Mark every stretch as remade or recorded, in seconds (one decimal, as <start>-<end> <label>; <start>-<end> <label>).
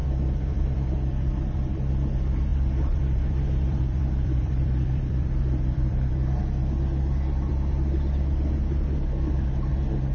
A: 0.0-1.9 remade; 1.9-2.5 recorded; 2.5-6.4 remade; 6.4-10.1 recorded